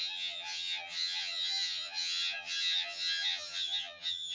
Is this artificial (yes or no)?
yes